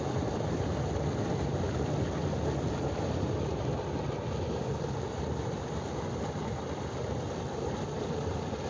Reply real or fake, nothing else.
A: real